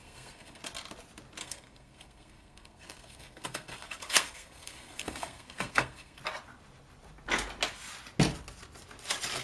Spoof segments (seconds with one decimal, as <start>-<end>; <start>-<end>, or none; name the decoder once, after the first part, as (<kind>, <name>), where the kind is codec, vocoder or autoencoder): 0.0-0.6 (codec, SNAC); 1.4-6.2